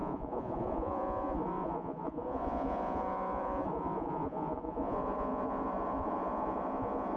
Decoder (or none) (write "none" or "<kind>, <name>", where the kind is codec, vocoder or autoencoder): vocoder, Vocos